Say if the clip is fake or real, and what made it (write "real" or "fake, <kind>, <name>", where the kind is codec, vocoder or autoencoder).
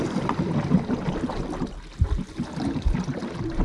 real